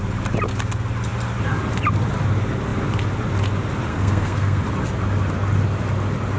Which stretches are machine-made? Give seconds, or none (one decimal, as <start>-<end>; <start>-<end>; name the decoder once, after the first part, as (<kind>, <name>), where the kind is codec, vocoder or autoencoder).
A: 3.9-4.6 (codec, SNAC)